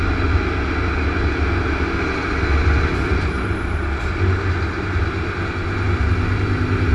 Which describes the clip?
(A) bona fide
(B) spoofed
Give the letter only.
A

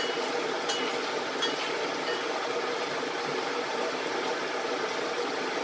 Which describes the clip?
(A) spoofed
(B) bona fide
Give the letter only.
B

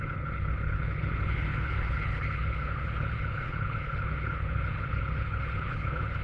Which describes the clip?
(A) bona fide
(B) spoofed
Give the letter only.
B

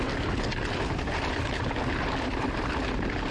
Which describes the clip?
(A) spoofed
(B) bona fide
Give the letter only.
B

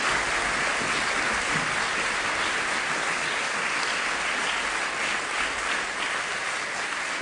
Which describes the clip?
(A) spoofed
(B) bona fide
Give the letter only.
B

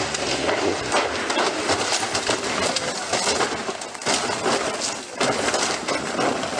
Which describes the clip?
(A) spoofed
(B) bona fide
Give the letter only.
B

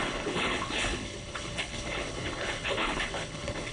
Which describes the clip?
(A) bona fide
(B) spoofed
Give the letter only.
B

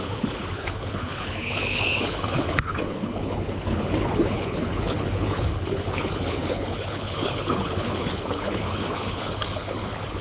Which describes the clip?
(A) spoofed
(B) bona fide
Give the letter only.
A